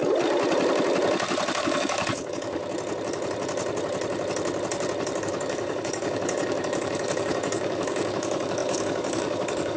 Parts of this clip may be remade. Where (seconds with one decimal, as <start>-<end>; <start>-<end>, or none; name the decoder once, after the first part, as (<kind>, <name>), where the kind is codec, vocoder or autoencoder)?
1.6-2.6 (codec, DAC); 5.2-9.8